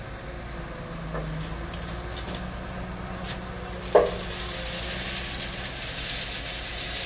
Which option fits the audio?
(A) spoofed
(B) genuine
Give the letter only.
B